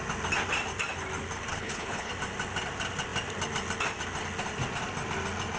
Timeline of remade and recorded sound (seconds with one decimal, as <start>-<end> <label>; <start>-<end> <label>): 0.0-1.5 recorded; 1.5-2.1 remade; 2.1-5.6 recorded